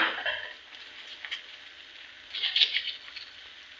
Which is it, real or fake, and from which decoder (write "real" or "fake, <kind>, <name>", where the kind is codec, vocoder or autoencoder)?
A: real